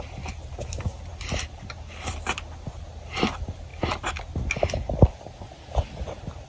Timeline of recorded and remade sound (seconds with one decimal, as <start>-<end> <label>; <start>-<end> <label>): 0.0-6.5 recorded